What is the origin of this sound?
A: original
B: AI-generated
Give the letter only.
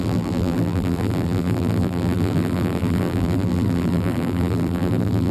B